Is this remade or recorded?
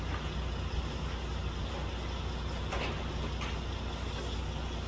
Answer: recorded